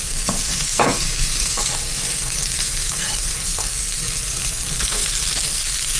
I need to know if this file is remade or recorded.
remade